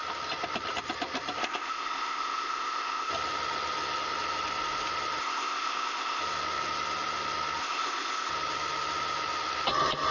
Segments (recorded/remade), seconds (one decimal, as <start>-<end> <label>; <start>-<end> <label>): 0.0-1.4 recorded; 1.4-3.1 remade; 3.1-5.2 recorded; 5.2-6.2 remade; 6.2-7.6 recorded; 7.6-8.3 remade; 8.3-10.1 recorded